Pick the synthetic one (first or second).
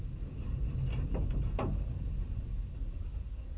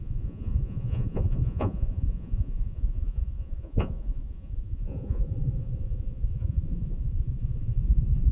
second